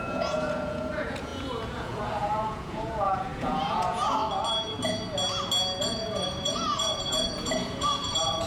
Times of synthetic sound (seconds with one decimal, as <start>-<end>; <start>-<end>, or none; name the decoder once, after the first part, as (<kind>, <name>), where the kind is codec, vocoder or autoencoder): 0.0-4.2 (vocoder, Vocos); 5.8-8.5